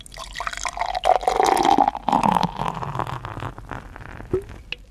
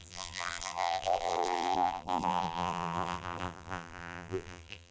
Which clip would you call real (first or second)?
first